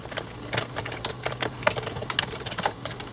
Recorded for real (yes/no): yes